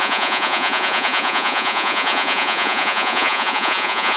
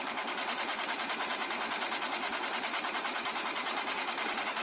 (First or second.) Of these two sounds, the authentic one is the second